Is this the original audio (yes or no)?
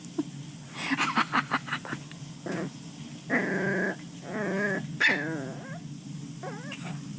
yes